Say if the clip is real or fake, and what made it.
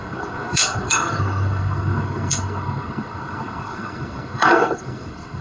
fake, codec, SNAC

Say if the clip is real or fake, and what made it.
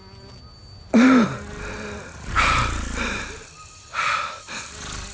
real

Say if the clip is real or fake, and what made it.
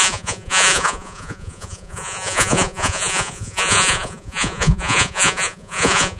fake, vocoder, Vocos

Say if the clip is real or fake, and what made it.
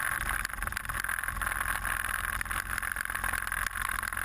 real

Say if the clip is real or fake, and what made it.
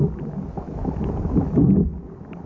real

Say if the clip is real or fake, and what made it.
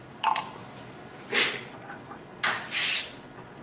real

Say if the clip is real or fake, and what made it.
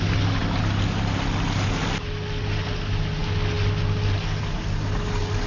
real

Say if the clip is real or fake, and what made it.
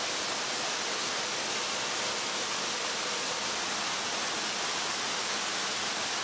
real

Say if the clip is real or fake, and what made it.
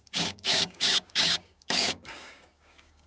fake, codec, DAC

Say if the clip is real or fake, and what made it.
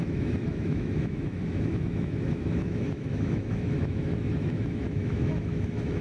fake, autoencoder, DAC-VAE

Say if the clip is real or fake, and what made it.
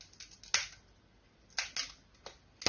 real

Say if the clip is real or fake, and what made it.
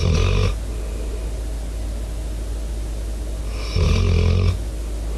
real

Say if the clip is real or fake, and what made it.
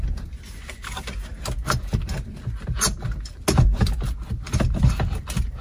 real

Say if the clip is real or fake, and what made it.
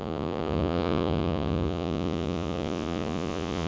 fake, vocoder, Vocos